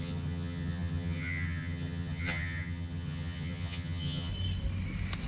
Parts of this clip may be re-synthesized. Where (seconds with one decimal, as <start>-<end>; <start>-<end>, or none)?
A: 0.0-4.3